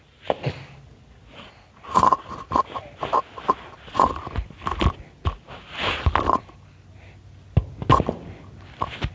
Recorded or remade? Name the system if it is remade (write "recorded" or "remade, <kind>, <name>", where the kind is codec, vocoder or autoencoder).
recorded